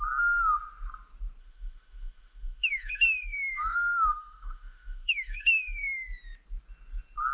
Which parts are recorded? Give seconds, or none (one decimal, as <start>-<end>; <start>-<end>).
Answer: 0.0-1.4; 5.8-7.3